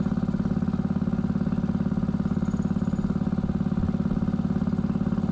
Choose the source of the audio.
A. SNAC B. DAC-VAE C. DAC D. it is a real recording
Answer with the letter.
D